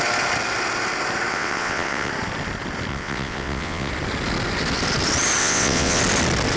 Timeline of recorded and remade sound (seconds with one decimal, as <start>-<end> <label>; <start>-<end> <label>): 0.0-1.3 recorded; 1.3-2.1 remade; 2.1-2.9 recorded; 2.9-3.9 remade; 3.9-5.4 recorded; 5.4-6.0 remade; 6.0-6.6 recorded